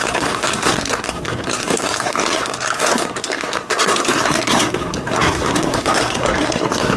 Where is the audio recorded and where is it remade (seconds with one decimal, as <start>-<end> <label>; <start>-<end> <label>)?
0.0-7.0 remade